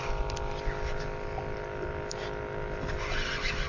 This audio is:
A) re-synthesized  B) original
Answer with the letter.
B